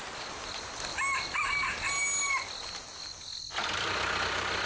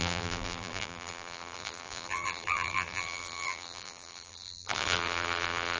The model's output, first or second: second